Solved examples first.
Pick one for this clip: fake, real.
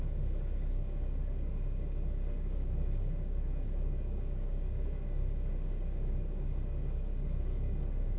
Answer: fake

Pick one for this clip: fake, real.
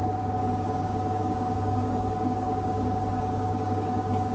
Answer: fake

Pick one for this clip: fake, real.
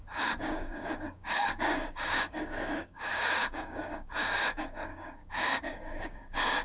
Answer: fake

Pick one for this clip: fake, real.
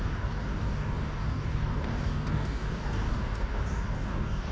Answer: fake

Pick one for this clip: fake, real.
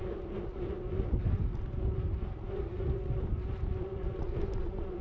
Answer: real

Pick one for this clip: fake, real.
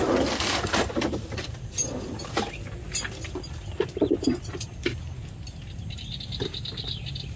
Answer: real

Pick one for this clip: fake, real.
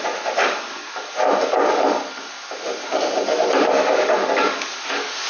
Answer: fake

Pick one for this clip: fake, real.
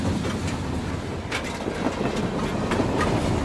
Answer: real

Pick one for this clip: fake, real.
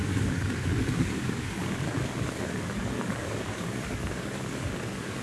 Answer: fake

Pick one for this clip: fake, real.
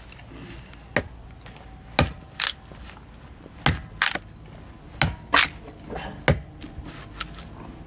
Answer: real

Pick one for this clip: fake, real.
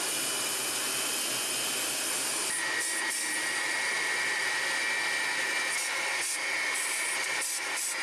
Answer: real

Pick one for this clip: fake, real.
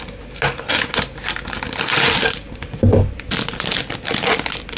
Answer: real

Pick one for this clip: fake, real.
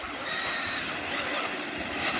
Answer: real